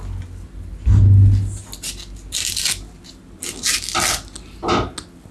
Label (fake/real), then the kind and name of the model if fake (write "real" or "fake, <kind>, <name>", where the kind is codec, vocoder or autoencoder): real